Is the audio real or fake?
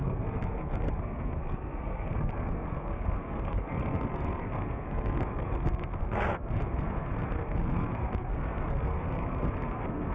fake